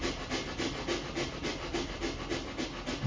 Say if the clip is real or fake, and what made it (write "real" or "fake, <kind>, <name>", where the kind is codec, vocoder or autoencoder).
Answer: real